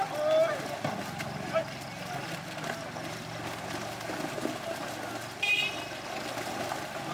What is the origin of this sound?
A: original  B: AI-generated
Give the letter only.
A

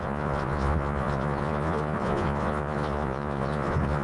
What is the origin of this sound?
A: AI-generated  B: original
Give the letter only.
A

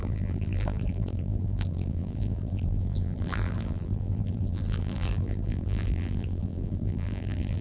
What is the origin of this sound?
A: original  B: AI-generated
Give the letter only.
B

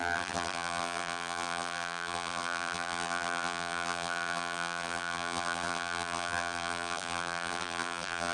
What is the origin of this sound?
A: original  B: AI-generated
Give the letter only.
B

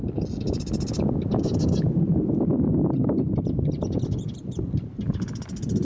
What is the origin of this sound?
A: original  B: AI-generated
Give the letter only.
A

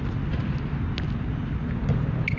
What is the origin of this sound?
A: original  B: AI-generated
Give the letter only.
A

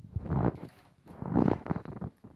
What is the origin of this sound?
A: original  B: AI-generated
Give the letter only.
B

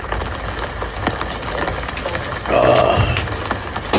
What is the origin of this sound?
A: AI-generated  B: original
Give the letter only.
B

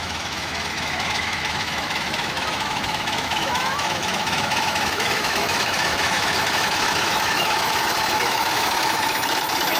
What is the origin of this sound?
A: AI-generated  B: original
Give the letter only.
A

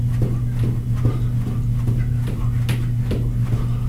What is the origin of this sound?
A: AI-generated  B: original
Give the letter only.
B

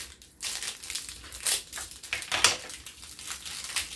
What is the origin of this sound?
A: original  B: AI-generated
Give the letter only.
A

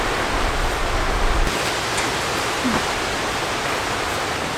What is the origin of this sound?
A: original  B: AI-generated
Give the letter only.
A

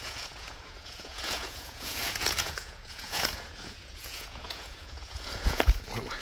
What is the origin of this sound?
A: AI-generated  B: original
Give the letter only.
A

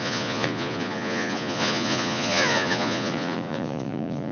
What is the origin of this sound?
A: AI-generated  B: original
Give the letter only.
A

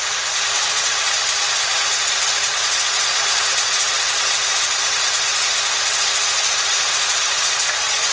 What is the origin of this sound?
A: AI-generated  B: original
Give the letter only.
A